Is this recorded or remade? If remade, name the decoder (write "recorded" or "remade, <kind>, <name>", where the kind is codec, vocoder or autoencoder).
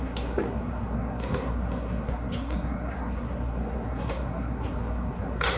remade, codec, SNAC